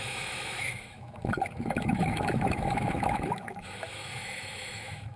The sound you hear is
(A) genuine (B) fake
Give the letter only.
B